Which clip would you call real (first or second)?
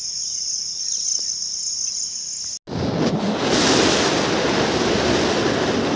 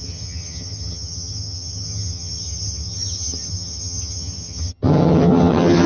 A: first